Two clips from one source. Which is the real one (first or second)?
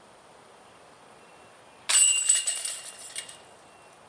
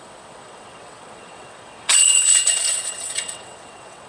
first